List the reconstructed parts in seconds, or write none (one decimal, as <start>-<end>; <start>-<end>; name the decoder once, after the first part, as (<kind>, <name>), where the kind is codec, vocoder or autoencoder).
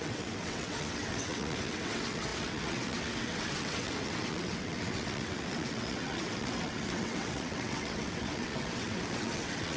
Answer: 0.0-9.8 (vocoder, WaveNeXt)